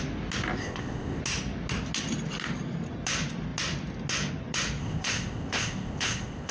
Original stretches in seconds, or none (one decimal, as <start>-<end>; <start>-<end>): 0.0-0.6; 1.2-4.8